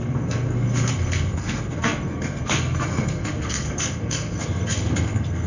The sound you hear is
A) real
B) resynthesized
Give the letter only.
B